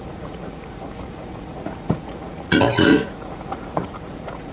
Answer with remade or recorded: remade